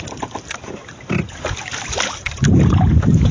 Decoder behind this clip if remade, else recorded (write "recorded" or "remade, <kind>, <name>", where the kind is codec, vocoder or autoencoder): remade, vocoder, BigVGAN v2